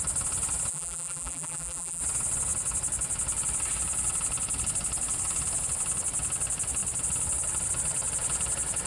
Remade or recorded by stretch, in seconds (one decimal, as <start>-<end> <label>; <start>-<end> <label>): 0.0-0.7 recorded; 0.7-2.0 remade; 2.0-8.9 recorded